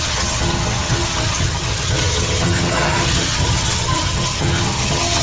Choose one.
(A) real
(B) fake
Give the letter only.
B